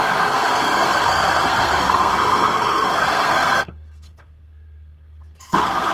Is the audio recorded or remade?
remade